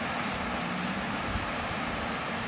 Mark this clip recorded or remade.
remade